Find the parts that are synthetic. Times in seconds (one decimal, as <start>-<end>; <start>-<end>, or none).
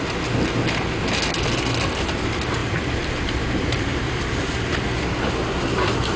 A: 2.6-3.1; 3.9-4.8